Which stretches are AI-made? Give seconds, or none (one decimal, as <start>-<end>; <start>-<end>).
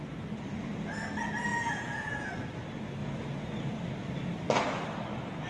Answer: 1.5-2.3